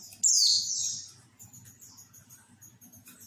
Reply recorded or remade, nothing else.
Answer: recorded